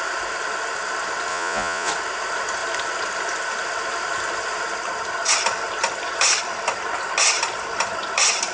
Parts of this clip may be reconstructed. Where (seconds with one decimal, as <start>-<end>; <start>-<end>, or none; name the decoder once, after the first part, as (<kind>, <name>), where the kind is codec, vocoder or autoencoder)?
1.3-1.9 (vocoder, Vocos)